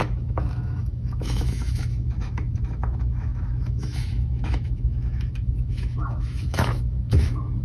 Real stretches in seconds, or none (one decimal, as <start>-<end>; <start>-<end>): none